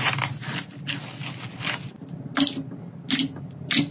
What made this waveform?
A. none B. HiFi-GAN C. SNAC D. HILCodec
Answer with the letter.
A